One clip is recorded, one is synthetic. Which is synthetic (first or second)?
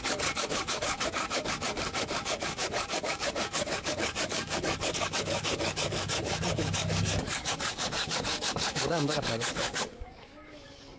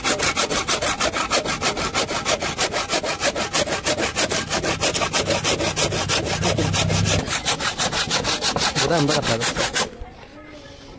first